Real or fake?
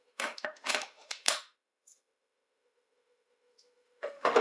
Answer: fake